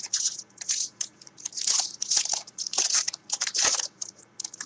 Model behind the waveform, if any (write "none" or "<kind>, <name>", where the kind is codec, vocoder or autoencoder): vocoder, Vocos